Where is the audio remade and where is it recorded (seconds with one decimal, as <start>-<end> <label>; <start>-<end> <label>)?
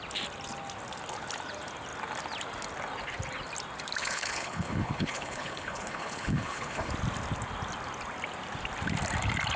0.0-4.0 recorded; 4.0-6.9 remade; 6.9-9.6 recorded